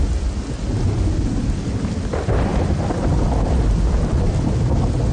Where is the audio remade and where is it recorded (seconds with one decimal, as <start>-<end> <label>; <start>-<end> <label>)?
0.0-5.1 recorded